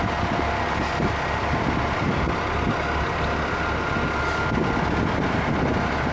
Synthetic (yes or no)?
no